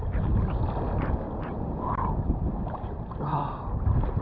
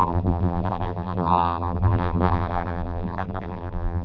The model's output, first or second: second